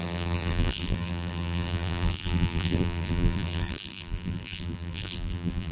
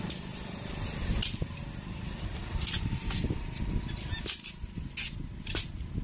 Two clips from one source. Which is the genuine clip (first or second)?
second